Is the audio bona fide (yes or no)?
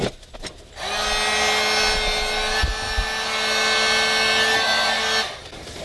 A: yes